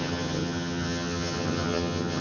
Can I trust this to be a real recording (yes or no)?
no